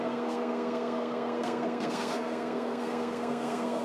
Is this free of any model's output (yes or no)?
no